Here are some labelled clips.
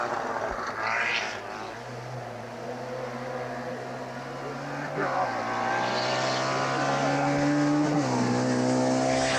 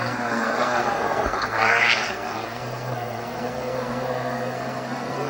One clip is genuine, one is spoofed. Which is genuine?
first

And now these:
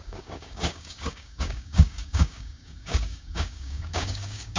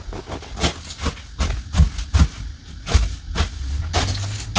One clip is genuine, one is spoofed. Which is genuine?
second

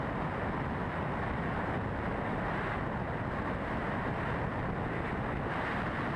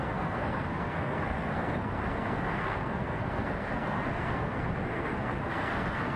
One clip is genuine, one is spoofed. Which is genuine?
first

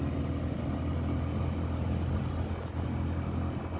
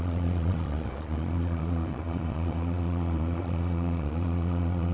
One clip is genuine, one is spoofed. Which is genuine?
first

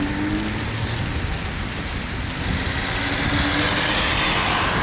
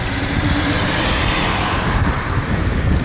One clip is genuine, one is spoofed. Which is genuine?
first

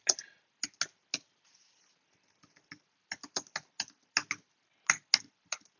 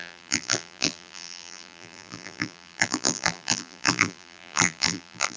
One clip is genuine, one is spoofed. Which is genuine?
first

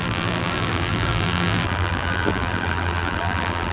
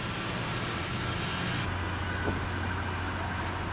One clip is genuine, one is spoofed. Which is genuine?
second